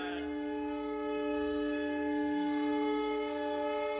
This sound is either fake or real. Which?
fake